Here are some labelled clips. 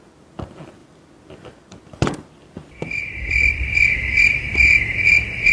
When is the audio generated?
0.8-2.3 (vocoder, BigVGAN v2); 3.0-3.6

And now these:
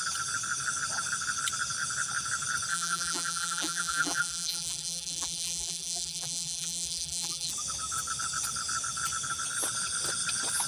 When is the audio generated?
2.7-7.5 (vocoder, BigVGAN v2)

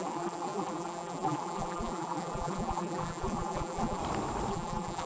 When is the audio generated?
0.0-4.0 (vocoder, BigVGAN v2); 4.5-5.1

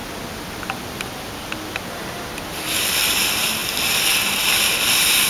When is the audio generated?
none

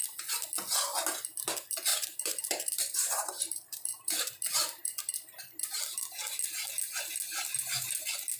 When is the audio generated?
1.9-5.8 (vocoder, BigVGAN v2)

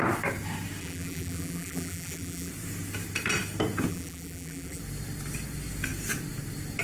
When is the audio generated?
0.8-2.5 (vocoder, BigVGAN v2); 3.9-4.8